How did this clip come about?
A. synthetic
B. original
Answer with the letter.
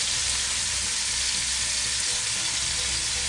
B